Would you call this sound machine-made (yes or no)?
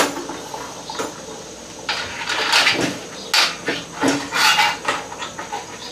no